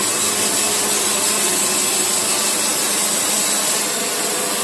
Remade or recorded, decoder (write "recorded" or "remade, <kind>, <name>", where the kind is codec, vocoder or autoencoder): recorded